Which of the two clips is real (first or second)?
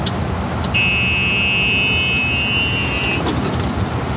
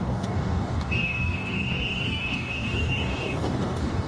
first